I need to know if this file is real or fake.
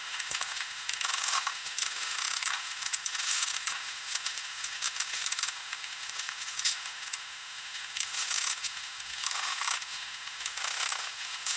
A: fake